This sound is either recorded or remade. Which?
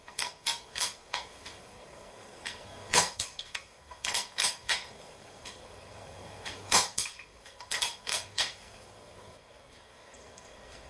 remade